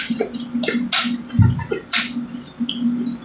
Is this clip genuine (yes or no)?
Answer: yes